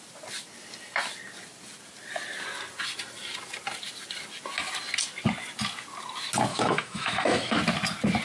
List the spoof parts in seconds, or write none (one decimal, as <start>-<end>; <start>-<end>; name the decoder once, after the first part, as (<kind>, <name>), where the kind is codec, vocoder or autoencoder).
6.5-7.6 (autoencoder, DAC-VAE)